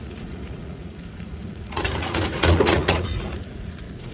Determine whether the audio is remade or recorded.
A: remade